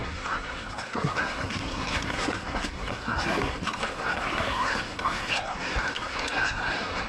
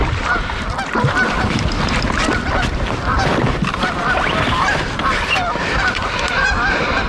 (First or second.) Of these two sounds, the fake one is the first